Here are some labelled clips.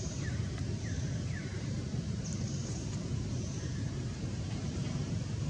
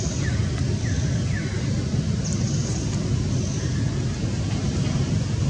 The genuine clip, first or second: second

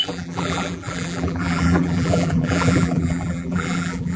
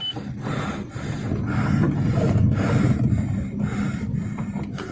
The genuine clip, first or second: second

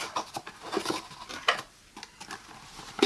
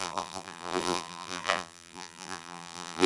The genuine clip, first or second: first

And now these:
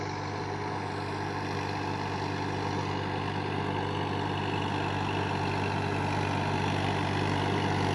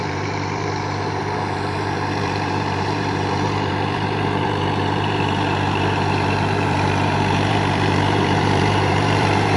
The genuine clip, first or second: first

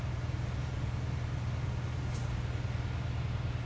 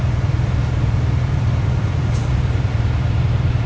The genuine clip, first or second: first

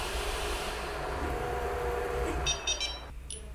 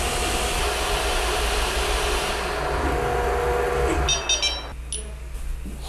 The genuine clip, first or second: second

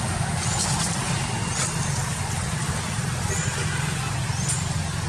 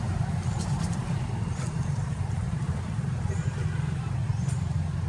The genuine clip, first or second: first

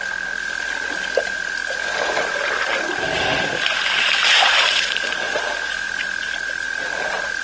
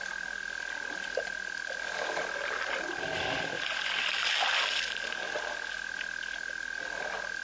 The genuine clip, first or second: second